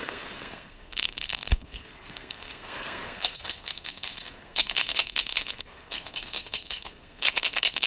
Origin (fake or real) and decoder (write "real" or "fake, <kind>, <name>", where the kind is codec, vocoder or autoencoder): fake, codec, SNAC